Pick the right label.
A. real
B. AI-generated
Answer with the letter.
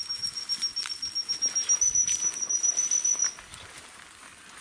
A